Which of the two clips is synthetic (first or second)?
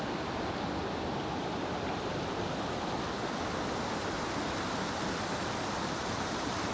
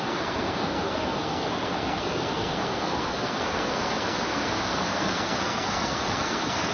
second